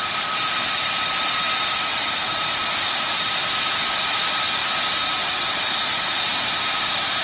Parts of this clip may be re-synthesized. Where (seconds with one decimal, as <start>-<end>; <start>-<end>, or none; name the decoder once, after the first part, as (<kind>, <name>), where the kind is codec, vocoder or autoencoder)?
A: 1.9-2.6 (vocoder, BigVGAN v2); 5.9-6.5